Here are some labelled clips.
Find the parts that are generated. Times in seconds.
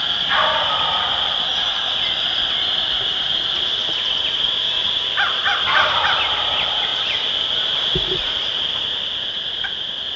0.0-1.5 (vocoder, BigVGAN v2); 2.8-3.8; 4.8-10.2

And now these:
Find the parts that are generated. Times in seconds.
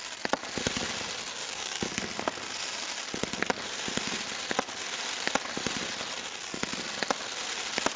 1.4-1.9 (codec, DAC)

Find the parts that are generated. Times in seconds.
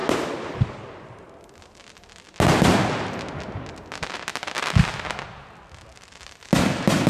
none